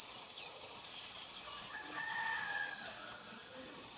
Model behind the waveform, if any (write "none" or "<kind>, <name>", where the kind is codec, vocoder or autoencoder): vocoder, WaveNeXt